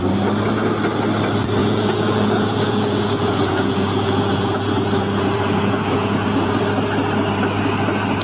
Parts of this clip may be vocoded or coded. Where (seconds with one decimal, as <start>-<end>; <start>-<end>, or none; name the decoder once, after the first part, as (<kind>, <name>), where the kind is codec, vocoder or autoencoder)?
1.6-6.5 (vocoder, Vocos)